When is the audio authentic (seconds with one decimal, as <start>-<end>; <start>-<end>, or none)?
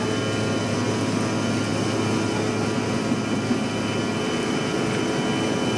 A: 0.0-5.8